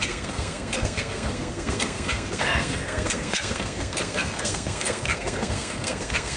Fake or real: fake